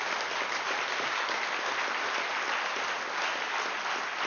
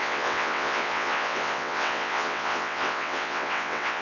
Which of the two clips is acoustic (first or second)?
first